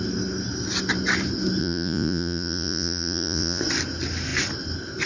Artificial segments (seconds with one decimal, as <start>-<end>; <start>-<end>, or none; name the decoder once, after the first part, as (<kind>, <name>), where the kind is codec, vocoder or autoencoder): 1.6-3.6 (vocoder, Vocos)